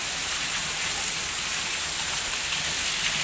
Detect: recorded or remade recorded